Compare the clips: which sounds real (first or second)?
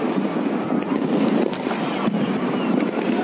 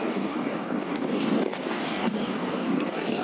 first